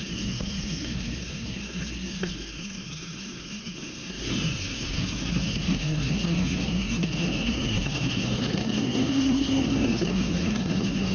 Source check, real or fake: fake